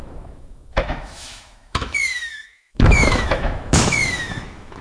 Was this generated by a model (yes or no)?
yes